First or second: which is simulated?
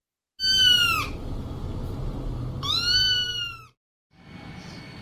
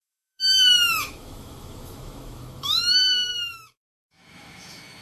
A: second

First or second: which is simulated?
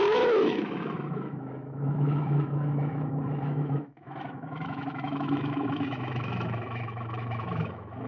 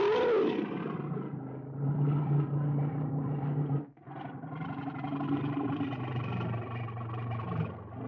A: first